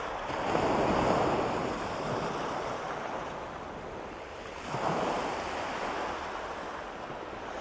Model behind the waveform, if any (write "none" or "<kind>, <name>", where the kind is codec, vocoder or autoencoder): none